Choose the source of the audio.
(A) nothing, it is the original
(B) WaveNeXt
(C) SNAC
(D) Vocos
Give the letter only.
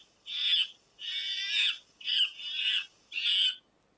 A